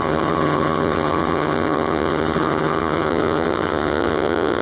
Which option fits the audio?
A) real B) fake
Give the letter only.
B